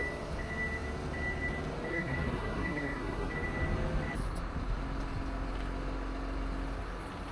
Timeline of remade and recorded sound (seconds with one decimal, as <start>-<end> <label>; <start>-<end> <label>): 0.0-1.9 recorded; 1.9-3.3 remade; 3.3-7.3 recorded

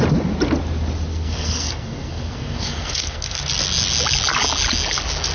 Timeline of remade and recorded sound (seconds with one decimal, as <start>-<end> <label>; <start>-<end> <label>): 0.0-1.1 recorded; 1.1-3.4 remade; 3.4-5.3 recorded

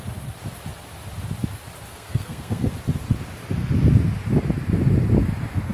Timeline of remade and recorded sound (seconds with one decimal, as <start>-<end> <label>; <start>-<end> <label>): 0.0-1.9 recorded; 1.9-2.7 remade; 2.7-5.7 recorded